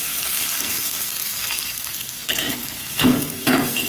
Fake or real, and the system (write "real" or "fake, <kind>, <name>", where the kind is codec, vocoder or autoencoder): fake, codec, SNAC